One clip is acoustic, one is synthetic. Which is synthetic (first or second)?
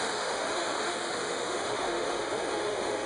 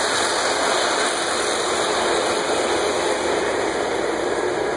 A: first